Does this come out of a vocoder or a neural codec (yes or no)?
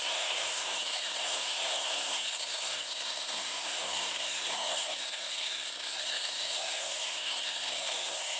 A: yes